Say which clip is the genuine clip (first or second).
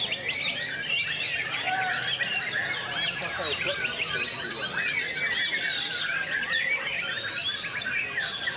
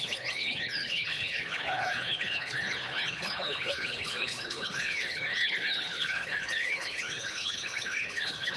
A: first